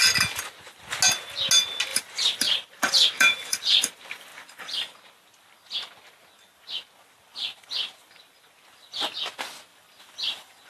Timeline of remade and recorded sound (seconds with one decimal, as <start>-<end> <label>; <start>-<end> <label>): 0.0-1.9 recorded; 1.9-3.9 remade; 3.9-9.7 recorded; 9.7-10.7 remade